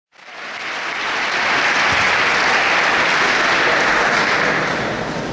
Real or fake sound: real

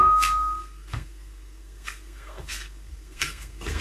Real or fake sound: fake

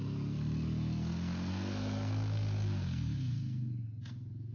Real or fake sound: fake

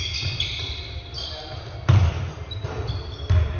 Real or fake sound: real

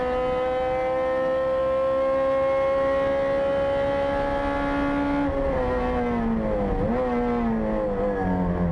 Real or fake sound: real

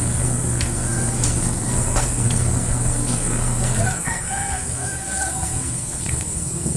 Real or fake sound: fake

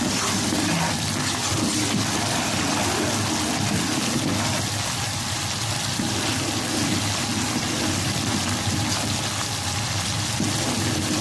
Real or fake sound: real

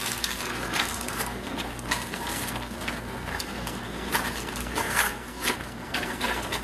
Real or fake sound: fake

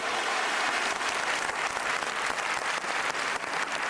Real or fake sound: real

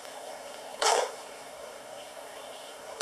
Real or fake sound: fake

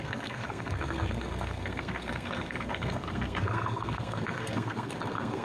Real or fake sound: fake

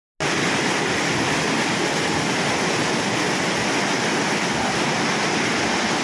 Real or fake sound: real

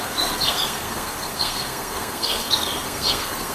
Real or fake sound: fake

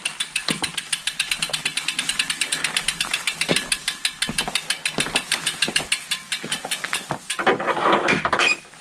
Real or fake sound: real